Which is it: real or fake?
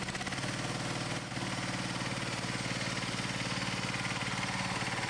real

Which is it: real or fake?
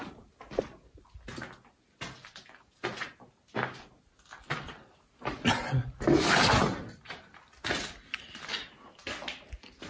real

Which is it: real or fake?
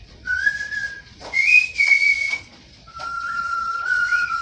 fake